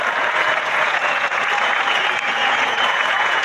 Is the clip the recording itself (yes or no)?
no